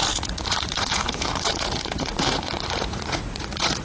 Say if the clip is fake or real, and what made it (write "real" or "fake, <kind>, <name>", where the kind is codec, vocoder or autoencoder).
fake, vocoder, Vocos